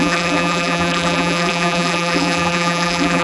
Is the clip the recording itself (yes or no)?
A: no